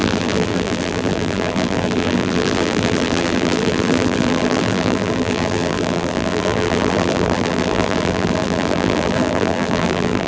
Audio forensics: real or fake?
fake